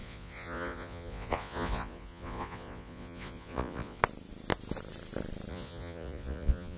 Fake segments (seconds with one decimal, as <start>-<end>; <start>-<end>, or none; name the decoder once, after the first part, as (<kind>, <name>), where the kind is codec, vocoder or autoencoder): 0.0-4.0 (vocoder, Vocos); 5.5-6.8